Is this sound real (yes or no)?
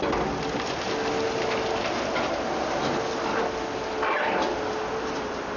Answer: yes